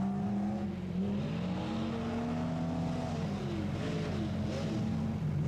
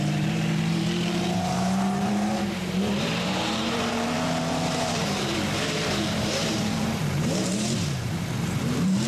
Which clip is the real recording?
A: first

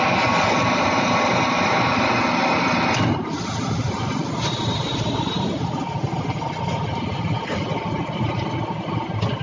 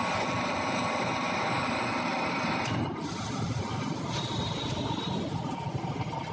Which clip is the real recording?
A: first